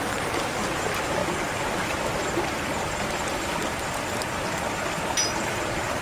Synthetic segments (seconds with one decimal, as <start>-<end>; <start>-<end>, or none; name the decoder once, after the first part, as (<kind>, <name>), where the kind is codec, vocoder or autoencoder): none